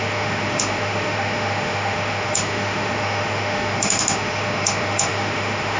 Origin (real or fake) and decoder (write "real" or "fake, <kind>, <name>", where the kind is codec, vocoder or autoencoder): fake, autoencoder, DAC-VAE